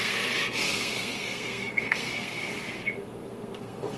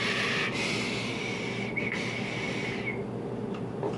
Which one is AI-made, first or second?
first